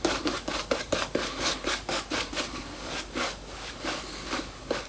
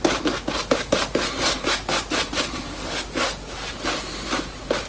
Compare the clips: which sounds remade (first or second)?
first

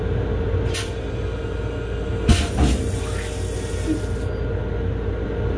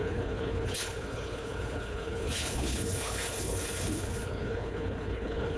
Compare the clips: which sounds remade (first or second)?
second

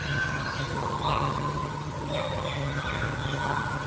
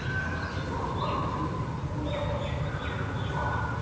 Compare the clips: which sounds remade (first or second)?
first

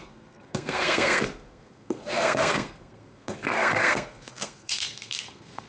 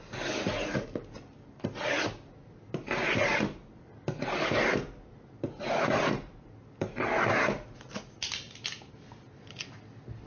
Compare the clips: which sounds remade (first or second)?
first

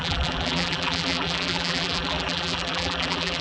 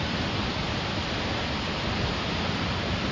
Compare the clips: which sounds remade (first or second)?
first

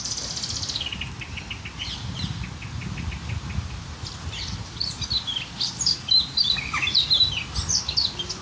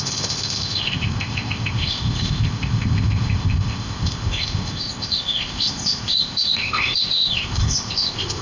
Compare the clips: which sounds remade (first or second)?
second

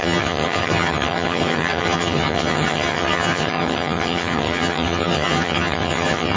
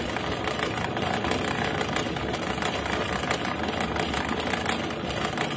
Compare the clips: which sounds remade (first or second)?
first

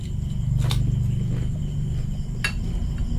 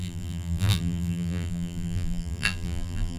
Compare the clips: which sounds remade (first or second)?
second